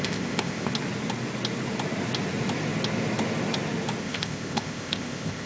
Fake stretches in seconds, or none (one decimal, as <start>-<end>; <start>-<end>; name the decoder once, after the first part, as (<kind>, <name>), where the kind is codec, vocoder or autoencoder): 0.0-0.7 (codec, ZipCodec); 4.0-5.5

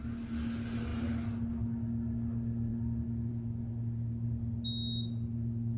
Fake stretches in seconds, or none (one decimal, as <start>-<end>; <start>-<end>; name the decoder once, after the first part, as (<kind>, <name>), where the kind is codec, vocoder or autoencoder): none

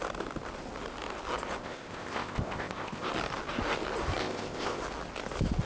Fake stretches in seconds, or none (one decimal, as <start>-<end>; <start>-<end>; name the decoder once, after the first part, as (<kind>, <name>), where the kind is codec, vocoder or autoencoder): 1.6-3.1 (codec, ZipCodec); 4.2-4.8

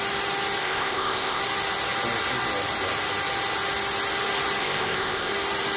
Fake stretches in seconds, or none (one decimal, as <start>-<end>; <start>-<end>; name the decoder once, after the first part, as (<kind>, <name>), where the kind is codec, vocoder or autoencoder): 0.6-1.4 (codec, ZipCodec); 4.6-5.3

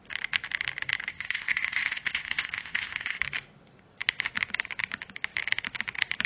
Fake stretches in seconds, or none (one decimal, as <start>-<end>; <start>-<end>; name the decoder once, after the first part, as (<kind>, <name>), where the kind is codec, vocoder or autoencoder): 1.1-3.2 (codec, ZipCodec)

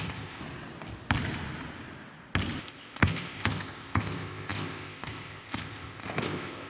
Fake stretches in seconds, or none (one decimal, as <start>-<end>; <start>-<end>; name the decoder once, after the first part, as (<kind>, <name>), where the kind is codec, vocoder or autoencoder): 0.0-0.4 (codec, ZipCodec); 2.6-6.7